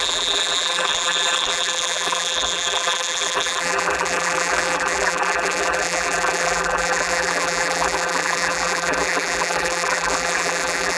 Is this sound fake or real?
fake